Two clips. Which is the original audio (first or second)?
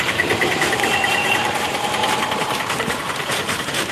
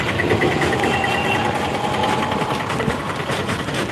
second